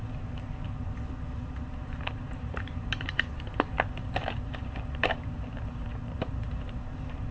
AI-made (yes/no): yes